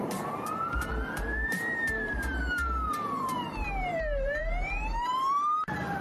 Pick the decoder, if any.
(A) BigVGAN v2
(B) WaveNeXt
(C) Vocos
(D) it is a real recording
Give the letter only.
A